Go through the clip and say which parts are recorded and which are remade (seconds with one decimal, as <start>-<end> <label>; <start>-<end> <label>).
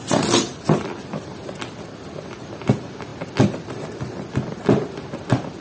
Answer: 0.0-5.6 recorded